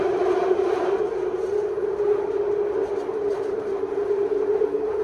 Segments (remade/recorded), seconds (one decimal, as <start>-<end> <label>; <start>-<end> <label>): 0.0-5.0 recorded